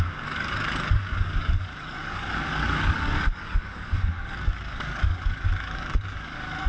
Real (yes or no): no